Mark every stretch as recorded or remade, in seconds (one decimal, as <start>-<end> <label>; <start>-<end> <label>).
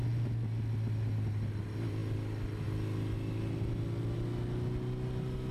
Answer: 0.0-5.5 recorded